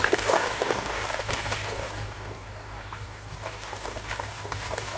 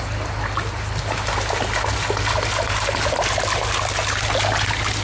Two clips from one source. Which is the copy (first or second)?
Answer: first